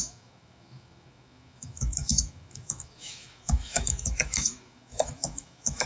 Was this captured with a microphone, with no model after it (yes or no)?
no